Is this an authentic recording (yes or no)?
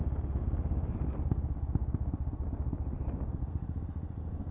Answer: yes